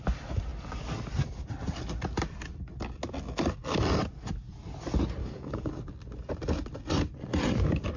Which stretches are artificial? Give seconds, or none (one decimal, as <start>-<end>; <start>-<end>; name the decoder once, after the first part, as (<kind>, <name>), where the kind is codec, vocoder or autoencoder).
5.2-5.7 (codec, DAC)